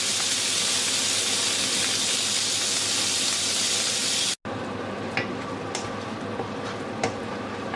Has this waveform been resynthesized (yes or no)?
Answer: no